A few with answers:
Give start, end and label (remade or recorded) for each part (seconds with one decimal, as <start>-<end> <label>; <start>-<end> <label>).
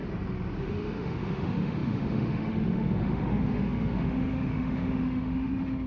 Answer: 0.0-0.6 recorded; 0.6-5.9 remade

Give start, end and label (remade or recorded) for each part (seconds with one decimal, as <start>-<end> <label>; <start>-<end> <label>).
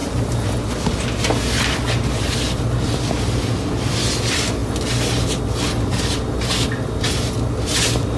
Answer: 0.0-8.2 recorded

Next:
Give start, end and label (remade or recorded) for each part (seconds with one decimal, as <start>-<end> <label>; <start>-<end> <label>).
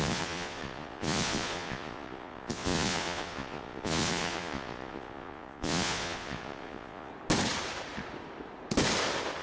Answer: 0.0-7.1 remade; 7.1-9.4 recorded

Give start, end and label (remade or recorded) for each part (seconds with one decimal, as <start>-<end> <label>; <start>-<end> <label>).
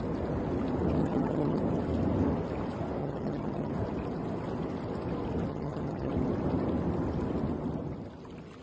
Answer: 0.0-1.0 recorded; 1.0-1.6 remade; 1.6-3.0 recorded; 3.0-3.7 remade; 3.7-5.5 recorded; 5.5-6.1 remade; 6.1-8.6 recorded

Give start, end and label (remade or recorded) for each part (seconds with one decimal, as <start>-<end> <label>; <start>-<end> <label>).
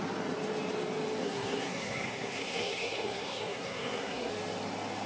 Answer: 0.0-1.2 recorded; 1.2-4.3 remade; 4.3-5.1 recorded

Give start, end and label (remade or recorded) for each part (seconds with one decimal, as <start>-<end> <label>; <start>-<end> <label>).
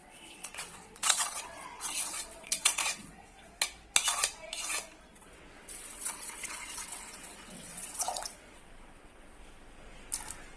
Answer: 0.0-3.5 remade; 3.5-5.1 recorded; 5.1-9.4 remade; 9.4-10.6 recorded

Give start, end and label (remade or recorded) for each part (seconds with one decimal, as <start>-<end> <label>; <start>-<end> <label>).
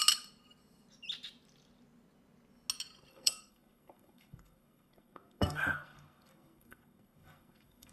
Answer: 0.0-3.1 recorded; 3.1-7.9 remade